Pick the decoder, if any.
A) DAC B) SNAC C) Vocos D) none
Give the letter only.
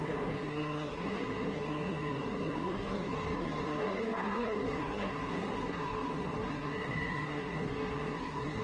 B